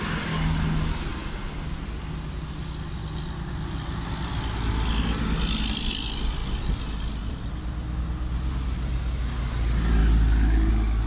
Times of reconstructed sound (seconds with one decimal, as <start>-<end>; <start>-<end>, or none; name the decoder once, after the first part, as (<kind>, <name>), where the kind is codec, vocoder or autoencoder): none